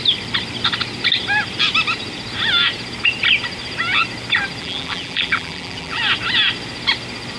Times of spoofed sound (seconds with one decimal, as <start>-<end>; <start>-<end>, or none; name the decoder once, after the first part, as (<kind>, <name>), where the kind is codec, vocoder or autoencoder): 4.6-6.0 (vocoder, BigVGAN v2)